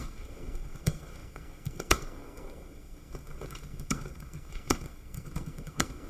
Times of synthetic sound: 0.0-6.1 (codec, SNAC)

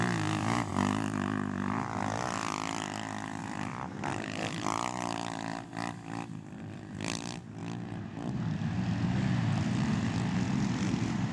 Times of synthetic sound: 0.0-0.7 (vocoder, BigVGAN v2); 3.4-7.6; 9.6-11.3

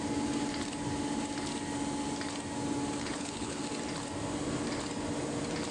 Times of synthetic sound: 3.0-3.6 (codec, HILCodec)